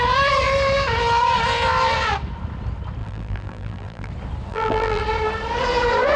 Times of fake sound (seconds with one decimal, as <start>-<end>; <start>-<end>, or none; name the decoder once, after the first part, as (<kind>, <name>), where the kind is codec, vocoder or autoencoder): 3.0-4.1 (vocoder, BigVGAN v2); 4.5-5.0